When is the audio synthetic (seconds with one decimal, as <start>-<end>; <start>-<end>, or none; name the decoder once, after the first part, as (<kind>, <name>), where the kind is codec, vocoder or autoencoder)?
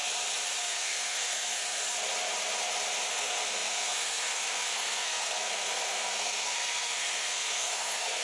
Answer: 0.6-1.8 (codec, SNAC); 3.1-8.2